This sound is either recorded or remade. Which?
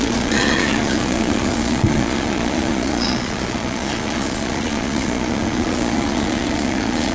remade